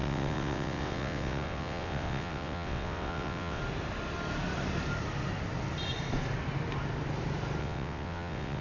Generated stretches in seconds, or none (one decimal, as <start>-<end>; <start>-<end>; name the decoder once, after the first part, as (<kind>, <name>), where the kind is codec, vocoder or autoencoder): 0.0-3.6 (vocoder, WaveNeXt); 7.6-8.6